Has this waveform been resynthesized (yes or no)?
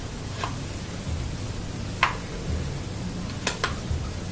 no